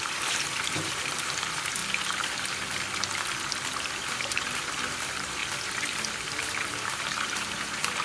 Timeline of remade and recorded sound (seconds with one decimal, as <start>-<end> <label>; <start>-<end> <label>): 0.0-1.8 remade; 1.8-3.8 recorded; 3.8-5.4 remade; 5.4-6.1 recorded; 6.1-8.0 remade